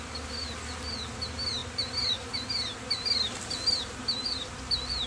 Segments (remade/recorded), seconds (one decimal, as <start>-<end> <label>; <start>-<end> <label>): 0.0-5.1 recorded